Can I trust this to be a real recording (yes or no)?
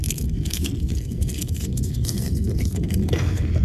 no